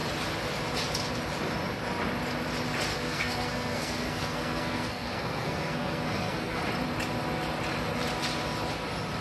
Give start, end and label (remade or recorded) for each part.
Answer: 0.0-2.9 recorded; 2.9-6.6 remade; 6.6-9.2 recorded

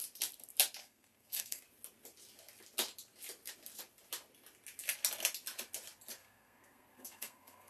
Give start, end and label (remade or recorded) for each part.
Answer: 0.0-0.8 recorded; 0.8-1.6 remade; 1.6-6.2 recorded; 6.2-7.7 remade